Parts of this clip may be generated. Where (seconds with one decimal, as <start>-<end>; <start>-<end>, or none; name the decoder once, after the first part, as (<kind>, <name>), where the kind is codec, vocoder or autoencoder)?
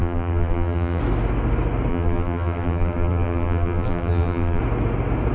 0.0-1.0 (vocoder, BigVGAN v2); 1.9-4.6